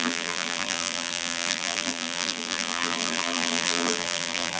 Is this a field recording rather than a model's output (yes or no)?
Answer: no